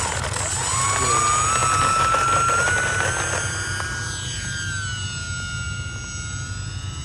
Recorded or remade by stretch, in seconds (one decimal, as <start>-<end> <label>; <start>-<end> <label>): 0.0-7.0 recorded